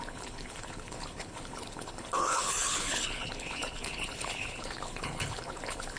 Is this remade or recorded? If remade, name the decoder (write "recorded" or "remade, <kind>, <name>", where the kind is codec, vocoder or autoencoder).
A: remade, codec, HILCodec